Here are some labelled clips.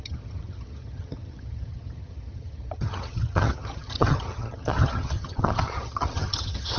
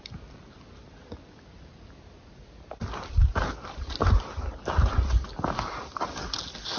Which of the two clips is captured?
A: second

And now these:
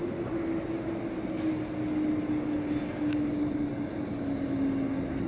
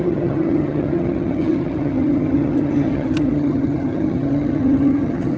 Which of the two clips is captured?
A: first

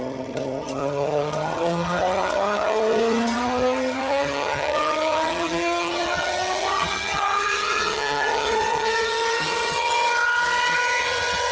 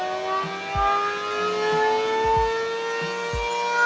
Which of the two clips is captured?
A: second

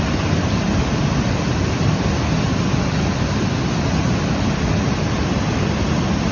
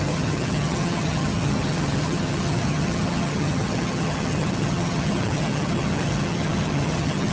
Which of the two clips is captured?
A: first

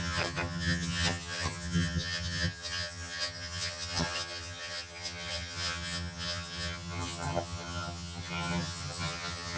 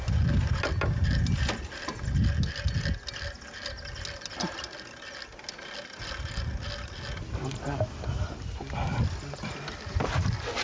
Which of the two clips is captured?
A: second